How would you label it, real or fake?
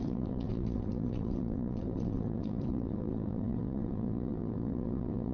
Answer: fake